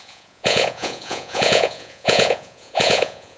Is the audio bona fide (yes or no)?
no